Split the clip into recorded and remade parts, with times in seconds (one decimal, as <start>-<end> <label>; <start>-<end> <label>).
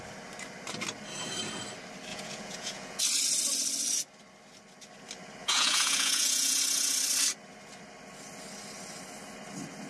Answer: 0.0-2.1 recorded; 2.1-3.0 remade; 3.0-5.4 recorded; 5.4-6.6 remade; 6.6-9.9 recorded